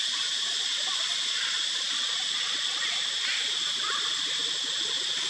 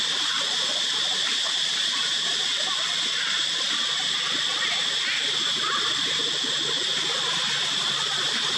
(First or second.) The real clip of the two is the second